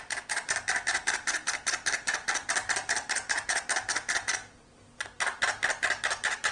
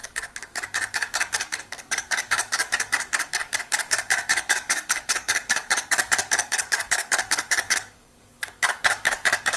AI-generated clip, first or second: second